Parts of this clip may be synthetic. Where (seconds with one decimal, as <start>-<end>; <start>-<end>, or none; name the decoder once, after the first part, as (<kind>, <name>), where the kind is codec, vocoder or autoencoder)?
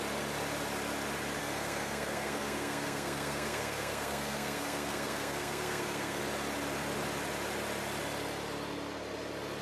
1.4-6.2 (codec, SNAC)